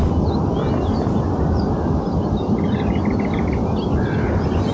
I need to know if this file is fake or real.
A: real